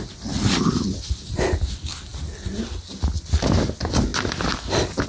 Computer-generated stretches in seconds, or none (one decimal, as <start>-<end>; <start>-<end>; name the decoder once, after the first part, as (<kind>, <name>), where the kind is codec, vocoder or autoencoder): none